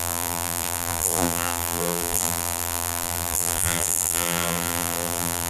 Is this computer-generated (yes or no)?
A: yes